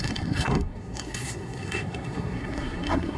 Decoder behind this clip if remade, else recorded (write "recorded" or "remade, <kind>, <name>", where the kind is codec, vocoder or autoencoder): remade, codec, SNAC